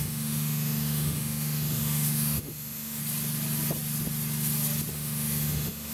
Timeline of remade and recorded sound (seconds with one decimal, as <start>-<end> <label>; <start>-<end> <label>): 0.0-3.0 remade; 3.0-4.9 recorded; 4.9-5.9 remade